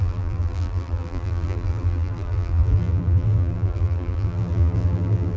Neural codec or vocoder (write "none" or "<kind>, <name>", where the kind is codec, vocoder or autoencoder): vocoder, BigVGAN v2